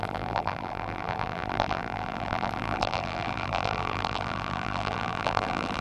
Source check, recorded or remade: remade